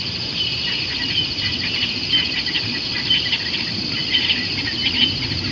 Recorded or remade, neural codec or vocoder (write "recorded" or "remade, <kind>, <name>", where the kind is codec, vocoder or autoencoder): remade, vocoder, BigVGAN v2